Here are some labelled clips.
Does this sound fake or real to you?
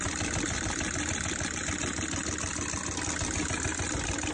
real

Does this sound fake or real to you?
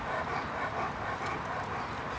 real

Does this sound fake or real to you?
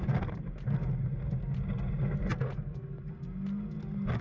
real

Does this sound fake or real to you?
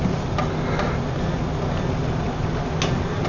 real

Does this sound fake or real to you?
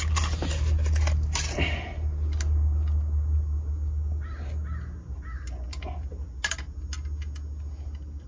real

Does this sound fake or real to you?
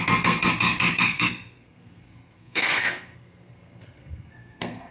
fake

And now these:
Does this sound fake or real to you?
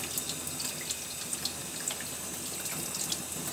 real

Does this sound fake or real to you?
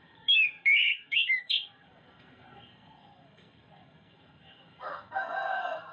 fake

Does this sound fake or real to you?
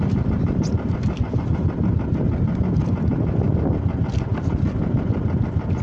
real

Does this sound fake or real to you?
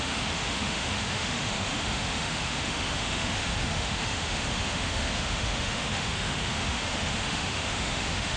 fake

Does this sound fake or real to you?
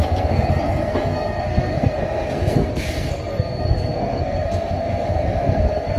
fake